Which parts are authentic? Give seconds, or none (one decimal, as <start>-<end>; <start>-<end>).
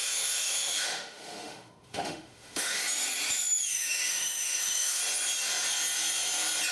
2.8-3.7; 5.0-6.7